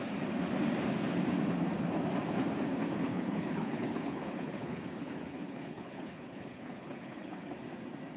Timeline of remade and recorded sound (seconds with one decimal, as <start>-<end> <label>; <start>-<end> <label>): 0.0-3.1 recorded; 3.1-7.5 remade; 7.5-8.2 recorded